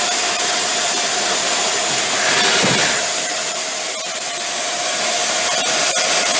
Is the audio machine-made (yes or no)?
yes